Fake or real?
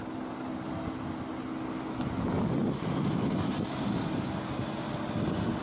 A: real